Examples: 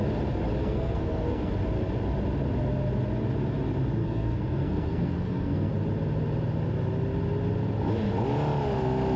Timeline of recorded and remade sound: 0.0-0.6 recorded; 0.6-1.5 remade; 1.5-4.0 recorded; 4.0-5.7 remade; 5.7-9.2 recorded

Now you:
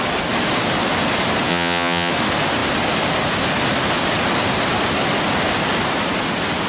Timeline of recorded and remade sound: 0.0-1.5 recorded; 1.5-2.1 remade; 2.1-6.7 recorded

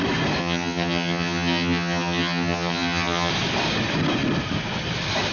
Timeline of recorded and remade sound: 0.0-0.4 recorded; 0.4-3.3 remade; 3.3-5.3 recorded